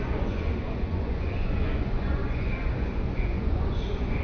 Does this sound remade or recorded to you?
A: remade